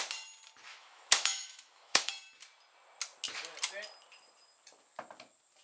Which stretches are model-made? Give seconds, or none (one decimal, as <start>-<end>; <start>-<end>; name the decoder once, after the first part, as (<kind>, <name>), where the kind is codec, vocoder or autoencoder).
0.7-2.1 (autoencoder, DAC-VAE)